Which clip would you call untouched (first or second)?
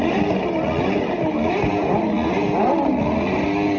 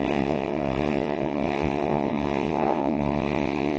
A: first